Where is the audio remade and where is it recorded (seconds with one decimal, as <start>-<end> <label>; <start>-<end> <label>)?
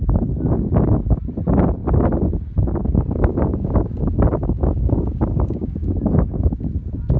0.0-2.8 recorded; 2.8-6.5 remade; 6.5-7.2 recorded